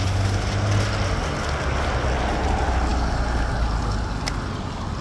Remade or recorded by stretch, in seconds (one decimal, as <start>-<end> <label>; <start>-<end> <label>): 0.0-5.0 recorded